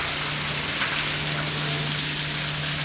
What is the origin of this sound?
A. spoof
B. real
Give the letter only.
B